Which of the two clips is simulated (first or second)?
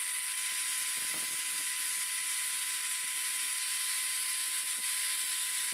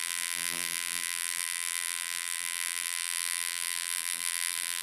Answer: second